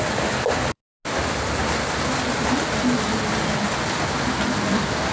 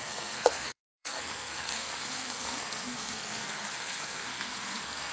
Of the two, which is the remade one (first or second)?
second